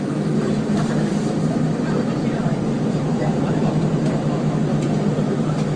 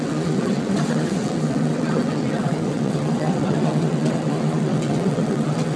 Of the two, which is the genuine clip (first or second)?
first